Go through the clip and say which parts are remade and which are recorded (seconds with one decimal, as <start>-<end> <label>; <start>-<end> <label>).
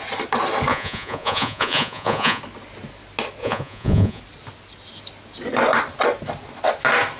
0.0-0.7 recorded; 0.7-2.4 remade; 2.4-3.4 recorded; 3.4-4.2 remade; 4.2-7.2 recorded